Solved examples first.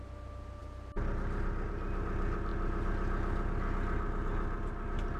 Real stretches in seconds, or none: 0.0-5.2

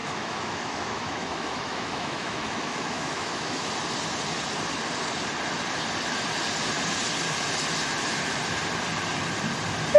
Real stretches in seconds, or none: 3.7-10.0

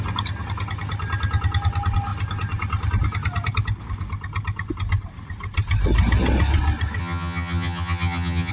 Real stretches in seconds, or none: 0.0-7.0

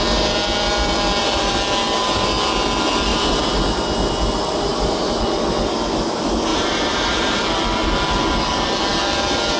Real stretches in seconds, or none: 0.0-3.1; 3.6-4.7; 5.2-6.5; 7.4-9.6

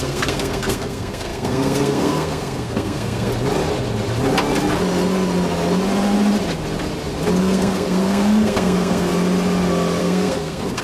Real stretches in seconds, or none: 3.3-7.4; 9.1-10.0

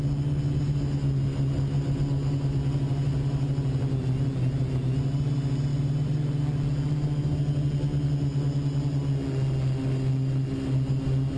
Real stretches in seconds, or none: 0.0-5.7; 6.4-11.4

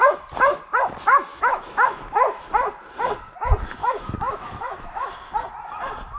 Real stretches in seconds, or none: 0.0-1.3; 2.4-3.8; 5.1-6.2